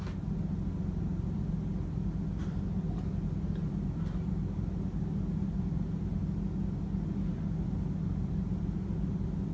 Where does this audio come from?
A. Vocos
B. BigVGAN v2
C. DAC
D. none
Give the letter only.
D